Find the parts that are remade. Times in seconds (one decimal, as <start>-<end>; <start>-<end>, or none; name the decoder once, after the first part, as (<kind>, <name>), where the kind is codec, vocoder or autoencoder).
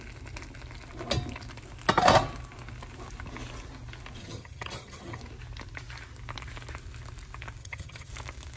4.2-5.2 (vocoder, HiFi-GAN); 7.6-8.1